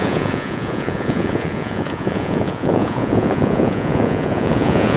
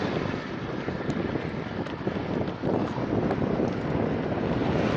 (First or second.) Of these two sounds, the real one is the second